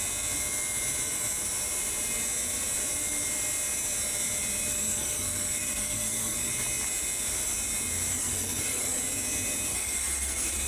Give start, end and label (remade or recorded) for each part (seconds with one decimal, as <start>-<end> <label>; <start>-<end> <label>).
0.0-4.7 recorded; 4.7-6.5 remade; 6.5-8.1 recorded; 8.1-9.0 remade; 9.0-9.7 recorded; 9.7-10.7 remade